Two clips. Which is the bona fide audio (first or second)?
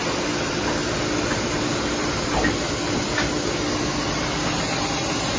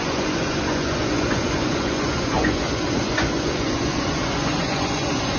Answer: first